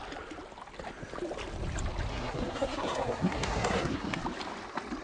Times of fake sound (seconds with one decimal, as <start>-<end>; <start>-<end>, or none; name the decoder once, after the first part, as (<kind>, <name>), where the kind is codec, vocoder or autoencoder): 2.1-4.2 (codec, SNAC)